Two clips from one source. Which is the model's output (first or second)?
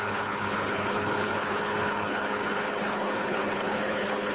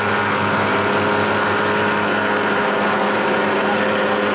first